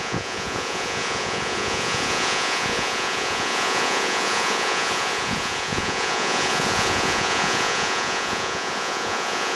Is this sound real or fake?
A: fake